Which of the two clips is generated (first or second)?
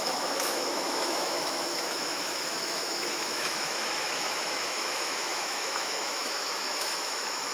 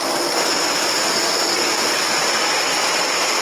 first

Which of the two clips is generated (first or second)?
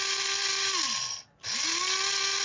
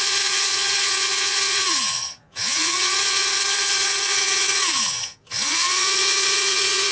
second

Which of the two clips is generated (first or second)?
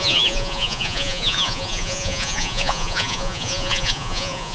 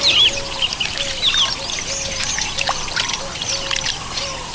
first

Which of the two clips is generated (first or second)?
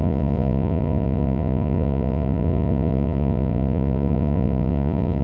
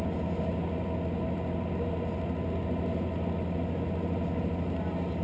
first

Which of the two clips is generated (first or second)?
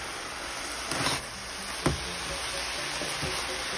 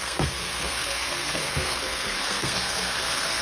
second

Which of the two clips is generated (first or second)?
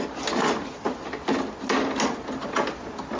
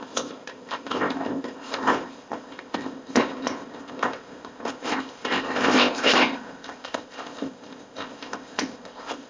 second